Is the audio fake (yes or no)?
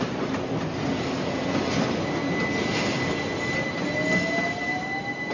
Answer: no